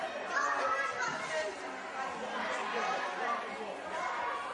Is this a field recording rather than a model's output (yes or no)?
yes